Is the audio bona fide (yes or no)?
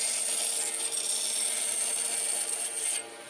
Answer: yes